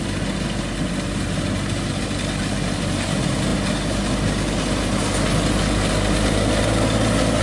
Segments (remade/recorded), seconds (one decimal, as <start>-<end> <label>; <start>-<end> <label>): 0.0-7.4 recorded